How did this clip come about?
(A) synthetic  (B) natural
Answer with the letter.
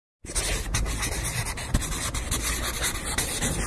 B